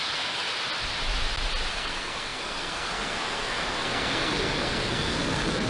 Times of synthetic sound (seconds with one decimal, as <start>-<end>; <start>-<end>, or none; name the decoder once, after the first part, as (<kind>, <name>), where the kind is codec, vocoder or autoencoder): 0.0-0.5 (codec, SNAC); 1.7-5.7